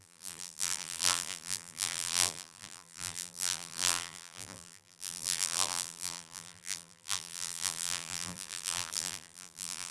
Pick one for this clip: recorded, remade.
remade